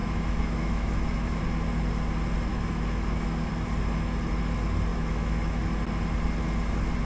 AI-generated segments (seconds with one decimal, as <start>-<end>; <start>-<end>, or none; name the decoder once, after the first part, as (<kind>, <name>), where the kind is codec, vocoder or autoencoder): 0.0-1.4 (autoencoder, DAC-VAE); 2.5-3.5; 4.9-5.6